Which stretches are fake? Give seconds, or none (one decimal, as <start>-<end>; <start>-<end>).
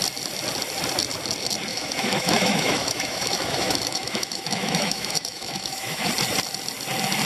1.7-6.1